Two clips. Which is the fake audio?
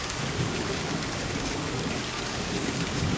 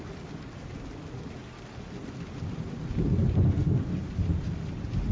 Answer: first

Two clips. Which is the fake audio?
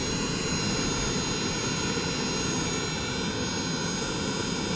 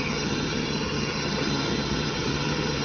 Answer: second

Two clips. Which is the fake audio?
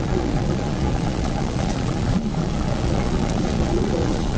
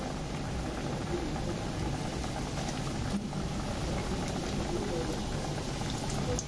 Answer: first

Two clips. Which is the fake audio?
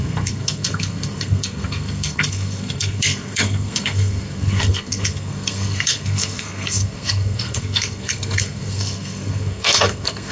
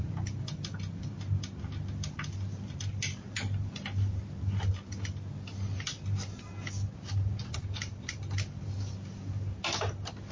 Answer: first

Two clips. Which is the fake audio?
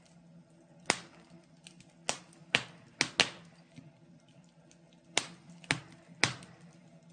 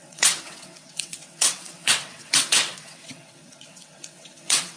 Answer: second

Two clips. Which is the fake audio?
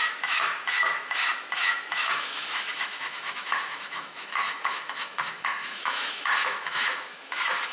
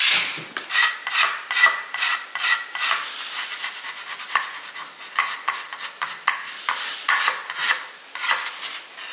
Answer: first